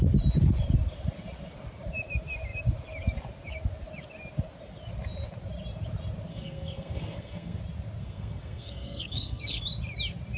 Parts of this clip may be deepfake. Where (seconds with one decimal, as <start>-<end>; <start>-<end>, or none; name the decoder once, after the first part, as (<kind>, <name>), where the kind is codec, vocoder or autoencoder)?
6.3-7.6 (codec, SNAC); 8.0-9.6